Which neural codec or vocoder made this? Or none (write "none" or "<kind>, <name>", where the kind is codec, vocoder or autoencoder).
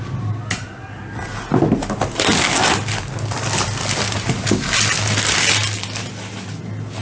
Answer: none